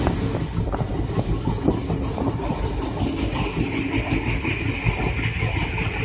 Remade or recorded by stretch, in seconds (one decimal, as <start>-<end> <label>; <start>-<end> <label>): 0.0-6.0 recorded

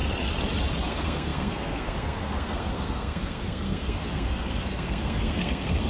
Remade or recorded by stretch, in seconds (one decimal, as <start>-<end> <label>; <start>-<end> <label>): 0.0-0.9 recorded; 0.9-5.9 remade